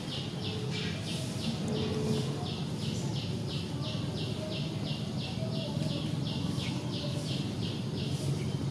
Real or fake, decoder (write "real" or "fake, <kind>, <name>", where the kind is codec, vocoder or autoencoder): real